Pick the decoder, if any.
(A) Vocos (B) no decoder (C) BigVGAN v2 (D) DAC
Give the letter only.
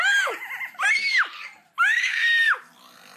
B